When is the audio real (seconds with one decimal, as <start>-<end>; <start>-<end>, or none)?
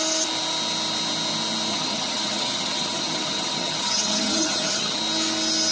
0.0-1.7; 5.0-5.7